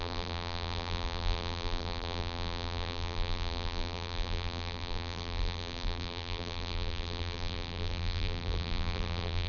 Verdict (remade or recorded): remade